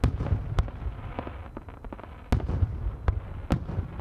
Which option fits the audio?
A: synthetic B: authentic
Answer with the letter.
B